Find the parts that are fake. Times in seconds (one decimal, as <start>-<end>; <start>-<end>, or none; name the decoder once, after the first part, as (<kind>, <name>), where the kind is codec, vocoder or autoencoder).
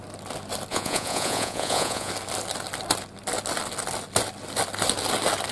0.7-2.1 (vocoder, Vocos)